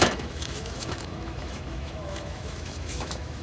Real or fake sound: fake